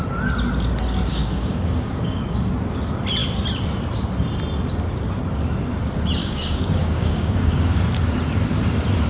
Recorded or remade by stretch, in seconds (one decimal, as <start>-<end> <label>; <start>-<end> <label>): 0.0-1.1 recorded; 1.1-2.5 remade; 2.5-6.2 recorded; 6.2-7.8 remade; 7.8-9.1 recorded